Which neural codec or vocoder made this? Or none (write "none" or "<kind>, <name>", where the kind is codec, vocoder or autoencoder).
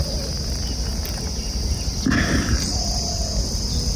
none